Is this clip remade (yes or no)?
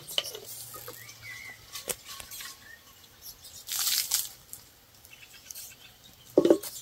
no